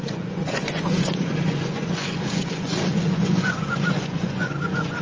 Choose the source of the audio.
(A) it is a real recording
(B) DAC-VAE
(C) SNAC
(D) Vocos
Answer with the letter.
D